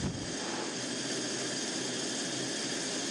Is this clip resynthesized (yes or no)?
no